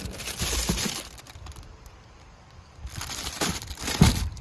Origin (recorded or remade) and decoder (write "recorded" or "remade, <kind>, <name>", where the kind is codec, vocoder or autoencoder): remade, vocoder, BigVGAN v2